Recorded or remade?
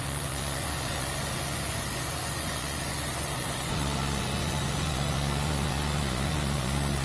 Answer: remade